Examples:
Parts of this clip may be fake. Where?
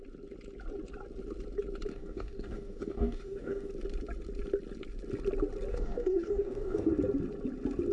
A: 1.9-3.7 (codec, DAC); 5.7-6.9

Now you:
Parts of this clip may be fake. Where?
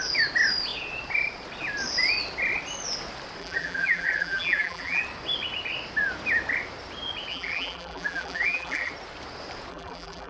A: 3.4-5.0 (vocoder, BigVGAN v2); 7.3-8.9; 9.7-10.3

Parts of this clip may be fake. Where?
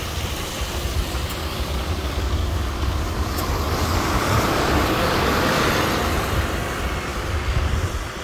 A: 1.4-5.7 (codec, DAC); 7.1-7.7